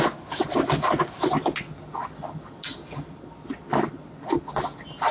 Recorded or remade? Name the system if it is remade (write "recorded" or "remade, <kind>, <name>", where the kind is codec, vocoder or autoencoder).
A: recorded